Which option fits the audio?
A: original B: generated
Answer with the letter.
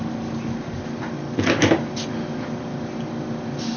A